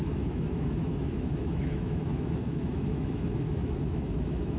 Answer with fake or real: fake